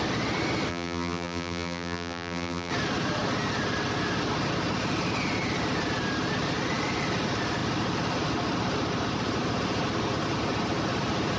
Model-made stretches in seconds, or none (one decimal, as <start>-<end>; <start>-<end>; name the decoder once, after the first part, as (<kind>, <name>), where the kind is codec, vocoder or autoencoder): 0.7-2.7 (vocoder, BigVGAN v2)